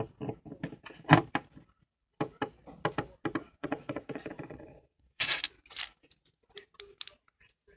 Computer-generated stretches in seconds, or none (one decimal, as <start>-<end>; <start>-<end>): 3.4-5.4